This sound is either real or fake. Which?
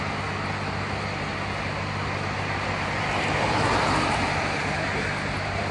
real